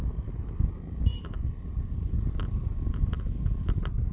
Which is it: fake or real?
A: real